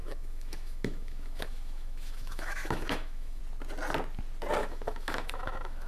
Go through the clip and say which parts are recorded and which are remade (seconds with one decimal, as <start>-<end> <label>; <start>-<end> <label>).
0.0-3.4 remade; 3.4-4.6 recorded; 4.6-5.9 remade